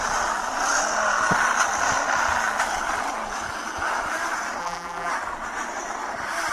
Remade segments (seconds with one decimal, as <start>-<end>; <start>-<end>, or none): 4.6-5.1